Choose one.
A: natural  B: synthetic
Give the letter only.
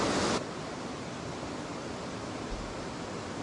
A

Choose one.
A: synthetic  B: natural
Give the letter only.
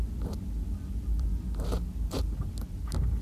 B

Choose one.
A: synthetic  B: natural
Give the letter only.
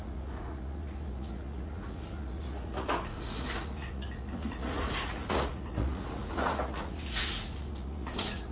A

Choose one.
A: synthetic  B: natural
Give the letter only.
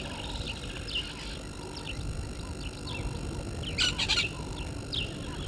B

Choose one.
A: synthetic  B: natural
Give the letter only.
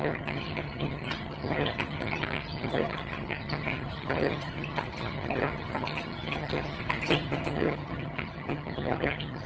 A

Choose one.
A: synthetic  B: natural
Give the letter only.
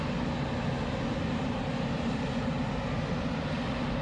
B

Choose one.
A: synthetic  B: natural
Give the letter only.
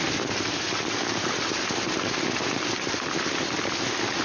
B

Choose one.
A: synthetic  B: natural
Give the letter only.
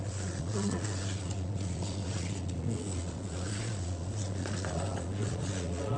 A